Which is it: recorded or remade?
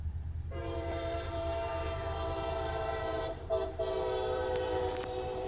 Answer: remade